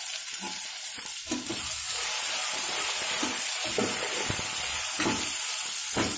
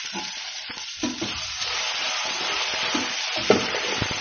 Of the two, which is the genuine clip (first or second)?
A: first